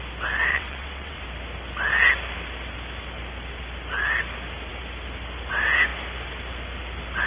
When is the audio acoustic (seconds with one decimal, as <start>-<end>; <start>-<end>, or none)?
0.0-0.5; 1.2-7.3